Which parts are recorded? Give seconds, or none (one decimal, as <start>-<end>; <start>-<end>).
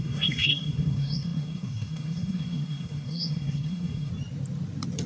4.1-5.1